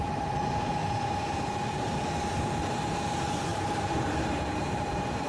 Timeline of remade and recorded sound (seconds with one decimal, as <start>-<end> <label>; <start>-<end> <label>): 0.0-0.8 recorded; 0.8-2.7 remade; 2.7-3.5 recorded; 3.5-5.3 remade